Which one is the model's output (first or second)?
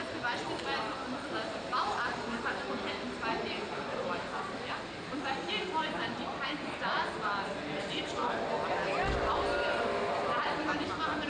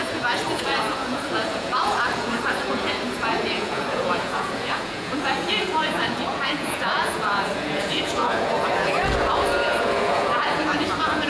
second